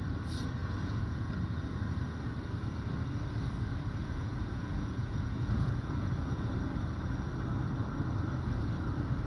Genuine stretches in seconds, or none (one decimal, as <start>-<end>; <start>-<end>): 0.0-0.6; 1.3-4.0; 6.5-9.3